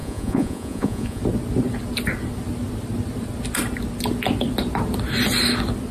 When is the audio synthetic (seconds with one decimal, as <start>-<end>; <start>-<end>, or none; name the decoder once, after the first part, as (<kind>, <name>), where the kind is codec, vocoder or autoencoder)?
0.0-1.2 (vocoder, Vocos)